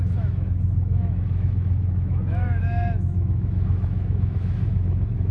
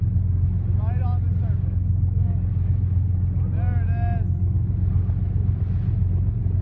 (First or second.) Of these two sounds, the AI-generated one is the first